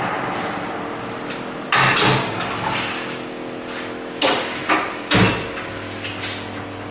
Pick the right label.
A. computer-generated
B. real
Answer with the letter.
B